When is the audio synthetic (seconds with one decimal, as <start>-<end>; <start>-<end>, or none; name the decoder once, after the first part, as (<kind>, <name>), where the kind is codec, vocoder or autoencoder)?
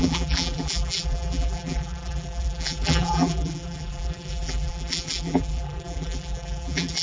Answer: 0.0-7.0 (vocoder, BigVGAN v2)